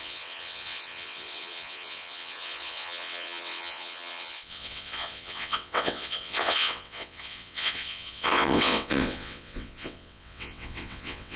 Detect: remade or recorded remade